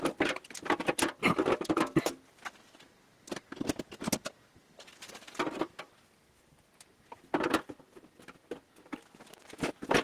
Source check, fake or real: real